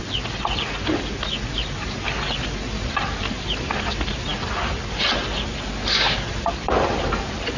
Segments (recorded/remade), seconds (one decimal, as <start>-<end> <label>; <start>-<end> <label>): 0.0-7.6 remade